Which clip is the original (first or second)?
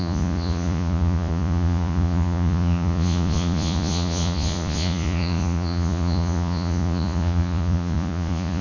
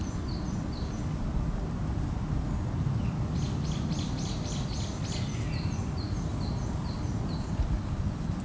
second